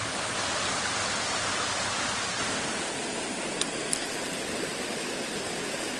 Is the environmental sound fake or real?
real